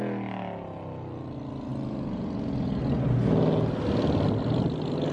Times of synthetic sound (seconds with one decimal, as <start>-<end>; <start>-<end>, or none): 1.7-2.8